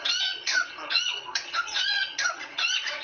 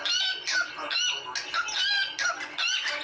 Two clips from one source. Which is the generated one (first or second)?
first